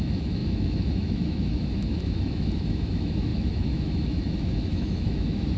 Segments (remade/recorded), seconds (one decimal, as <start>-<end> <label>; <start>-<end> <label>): 0.0-5.6 remade

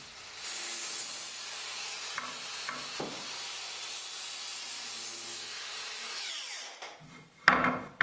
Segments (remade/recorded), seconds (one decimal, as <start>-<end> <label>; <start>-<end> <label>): 0.0-5.3 recorded; 5.3-6.3 remade; 6.3-8.0 recorded

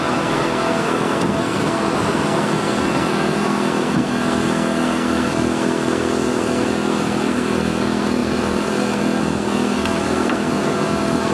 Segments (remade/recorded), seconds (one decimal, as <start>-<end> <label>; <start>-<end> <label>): 0.0-11.3 remade

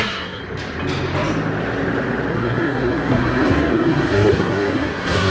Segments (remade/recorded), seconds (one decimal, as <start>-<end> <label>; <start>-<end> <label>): 0.0-0.4 remade; 0.4-2.3 recorded; 2.3-5.3 remade

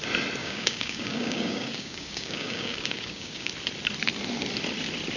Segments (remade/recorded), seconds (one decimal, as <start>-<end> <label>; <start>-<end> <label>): 0.0-0.4 recorded; 0.4-3.5 remade; 3.5-5.2 recorded